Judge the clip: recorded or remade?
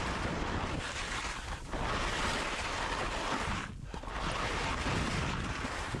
recorded